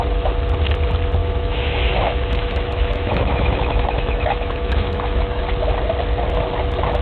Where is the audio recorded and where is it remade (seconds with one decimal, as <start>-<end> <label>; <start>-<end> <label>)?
0.0-1.2 recorded; 1.2-5.4 remade; 5.4-7.0 recorded